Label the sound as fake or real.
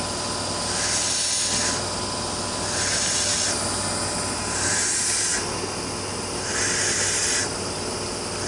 real